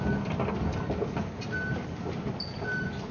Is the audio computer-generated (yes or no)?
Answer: no